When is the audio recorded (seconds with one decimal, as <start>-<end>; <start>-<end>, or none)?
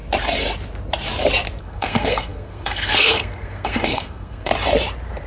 0.0-1.6; 4.5-5.3